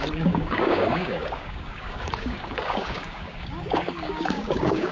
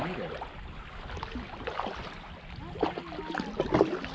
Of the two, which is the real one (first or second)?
second